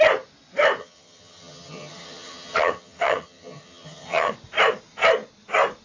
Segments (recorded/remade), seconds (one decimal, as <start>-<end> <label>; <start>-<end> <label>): 0.0-0.8 recorded; 0.8-4.3 remade; 4.3-5.8 recorded